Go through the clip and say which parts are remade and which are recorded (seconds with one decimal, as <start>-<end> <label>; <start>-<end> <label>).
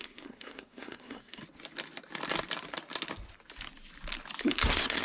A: 0.0-1.4 remade; 1.4-4.4 recorded; 4.4-5.0 remade